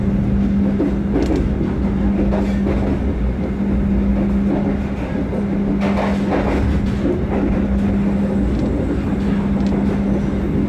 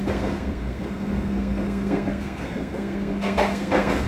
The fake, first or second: second